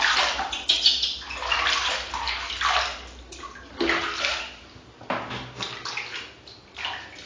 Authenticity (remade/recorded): recorded